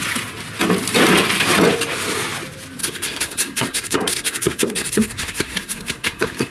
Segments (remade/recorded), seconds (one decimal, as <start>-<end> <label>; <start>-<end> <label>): 0.0-2.8 recorded; 2.8-6.5 remade